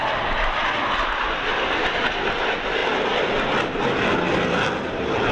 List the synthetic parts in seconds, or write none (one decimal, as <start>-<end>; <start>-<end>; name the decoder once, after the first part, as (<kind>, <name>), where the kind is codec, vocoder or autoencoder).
1.5-2.0 (vocoder, BigVGAN v2)